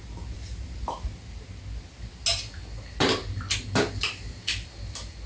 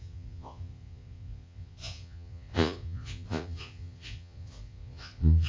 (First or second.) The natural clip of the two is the first